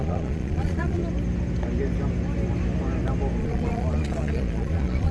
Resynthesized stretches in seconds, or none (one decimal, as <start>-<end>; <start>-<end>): 0.0-1.0; 3.4-5.1